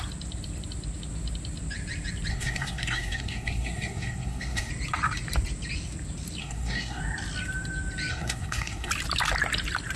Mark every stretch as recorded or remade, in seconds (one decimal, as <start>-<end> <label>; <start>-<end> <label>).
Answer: 0.0-2.3 recorded; 2.3-4.7 remade; 4.7-6.4 recorded; 6.4-7.0 remade; 7.0-8.1 recorded; 8.1-8.9 remade; 8.9-10.0 recorded